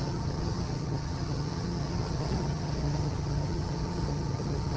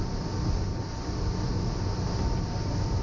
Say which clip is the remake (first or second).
first